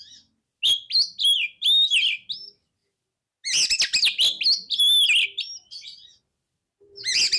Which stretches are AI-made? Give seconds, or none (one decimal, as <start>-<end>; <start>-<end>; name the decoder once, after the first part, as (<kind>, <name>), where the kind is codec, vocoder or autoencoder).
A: none

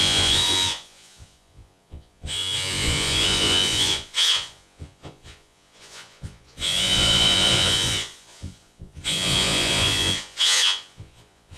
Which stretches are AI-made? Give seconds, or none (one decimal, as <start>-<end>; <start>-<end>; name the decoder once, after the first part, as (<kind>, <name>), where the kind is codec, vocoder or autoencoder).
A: 0.0-11.6 (vocoder, Vocos)

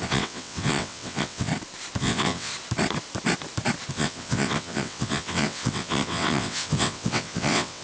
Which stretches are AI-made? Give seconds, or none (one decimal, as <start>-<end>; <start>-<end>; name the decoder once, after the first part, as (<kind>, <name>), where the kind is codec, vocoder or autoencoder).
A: 0.0-1.5 (vocoder, WaveNeXt); 2.0-2.5; 3.9-7.8

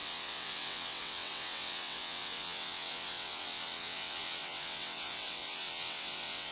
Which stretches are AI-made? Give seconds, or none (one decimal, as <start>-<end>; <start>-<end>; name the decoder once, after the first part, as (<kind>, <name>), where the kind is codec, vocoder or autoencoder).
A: 0.0-6.5 (vocoder, WaveNeXt)

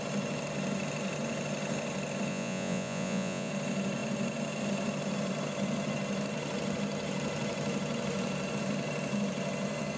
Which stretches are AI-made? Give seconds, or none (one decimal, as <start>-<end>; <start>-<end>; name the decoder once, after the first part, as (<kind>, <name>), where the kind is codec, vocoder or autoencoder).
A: 2.3-3.5 (vocoder, Vocos)